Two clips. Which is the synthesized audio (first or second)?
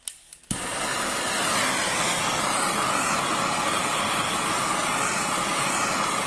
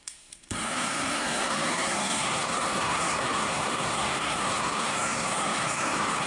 second